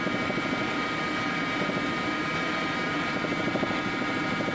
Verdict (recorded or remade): remade